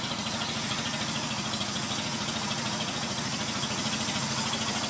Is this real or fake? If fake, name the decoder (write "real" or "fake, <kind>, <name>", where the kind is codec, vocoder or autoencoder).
fake, vocoder, Vocos